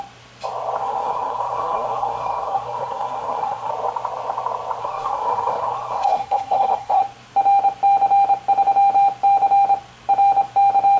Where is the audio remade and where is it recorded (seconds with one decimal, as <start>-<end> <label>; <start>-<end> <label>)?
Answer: 0.0-0.8 recorded; 0.8-3.7 remade; 3.7-4.8 recorded; 4.8-7.0 remade; 7.0-11.0 recorded